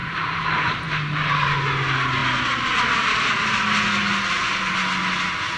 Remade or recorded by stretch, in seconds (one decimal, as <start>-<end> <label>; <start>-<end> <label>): 0.0-1.4 remade; 1.4-5.6 recorded